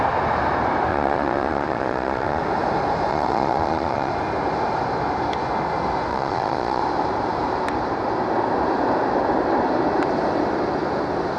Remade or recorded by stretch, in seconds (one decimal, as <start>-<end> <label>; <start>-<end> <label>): 0.0-0.9 recorded; 0.9-2.4 remade; 2.4-3.1 recorded; 3.1-4.1 remade; 4.1-6.1 recorded; 6.1-6.8 remade; 6.8-11.4 recorded